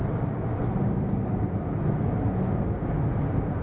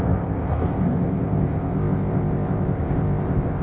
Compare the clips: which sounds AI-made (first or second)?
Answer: second